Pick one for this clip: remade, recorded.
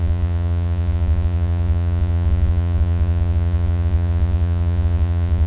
remade